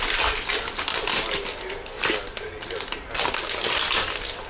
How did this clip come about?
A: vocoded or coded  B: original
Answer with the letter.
B